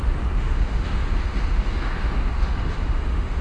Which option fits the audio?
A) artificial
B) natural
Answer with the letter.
A